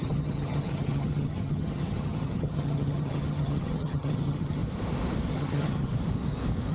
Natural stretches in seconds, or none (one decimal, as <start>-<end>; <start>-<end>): 4.6-5.3; 5.9-6.7